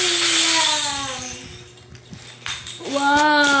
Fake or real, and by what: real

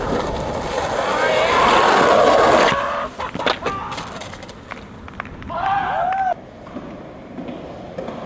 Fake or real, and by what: real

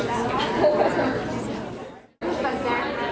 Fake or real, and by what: real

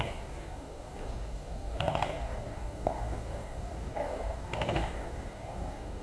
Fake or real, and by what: fake, codec, DAC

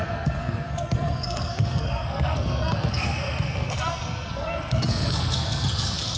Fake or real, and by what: fake, codec, SNAC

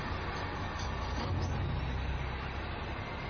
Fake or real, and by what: real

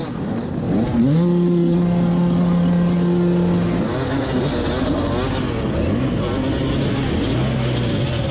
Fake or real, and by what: real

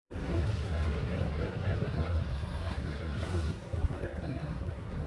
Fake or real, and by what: fake, codec, SNAC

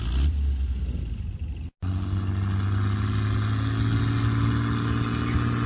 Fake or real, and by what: real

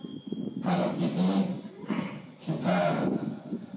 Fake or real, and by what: fake, vocoder, Vocos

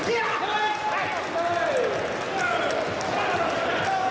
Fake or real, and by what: real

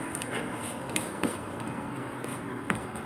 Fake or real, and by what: fake, codec, SNAC